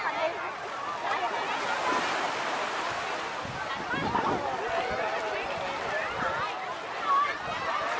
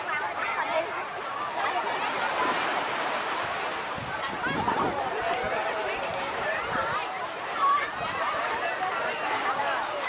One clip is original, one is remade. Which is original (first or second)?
first